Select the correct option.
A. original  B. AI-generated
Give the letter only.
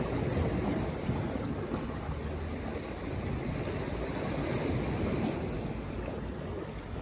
A